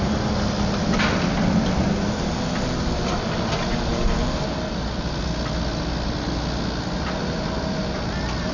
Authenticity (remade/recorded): recorded